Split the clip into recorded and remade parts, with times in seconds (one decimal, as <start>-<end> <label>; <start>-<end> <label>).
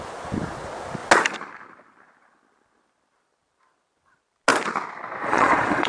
0.0-5.2 recorded; 5.2-5.9 remade